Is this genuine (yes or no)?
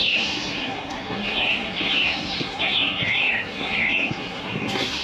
no